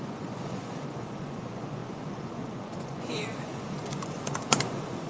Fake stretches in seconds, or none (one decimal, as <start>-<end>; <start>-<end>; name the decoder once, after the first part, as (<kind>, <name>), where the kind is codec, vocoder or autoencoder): 0.0-5.1 (vocoder, Vocos)